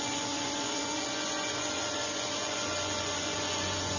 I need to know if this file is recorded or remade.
remade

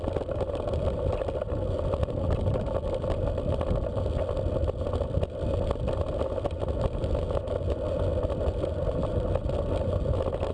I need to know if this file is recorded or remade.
recorded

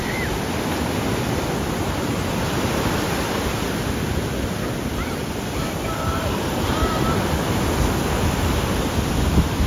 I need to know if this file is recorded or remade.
remade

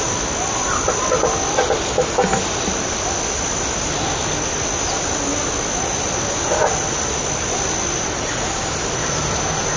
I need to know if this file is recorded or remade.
recorded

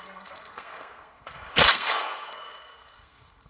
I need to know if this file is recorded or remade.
remade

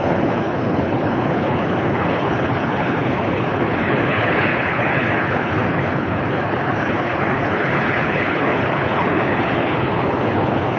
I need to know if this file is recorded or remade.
remade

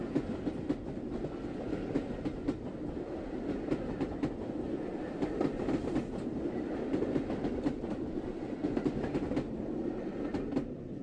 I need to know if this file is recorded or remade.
recorded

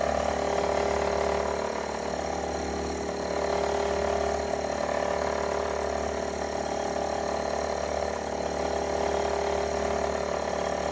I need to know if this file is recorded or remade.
recorded